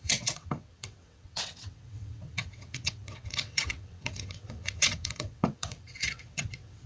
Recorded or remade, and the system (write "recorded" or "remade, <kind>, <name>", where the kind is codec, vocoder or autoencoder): remade, vocoder, WaveNeXt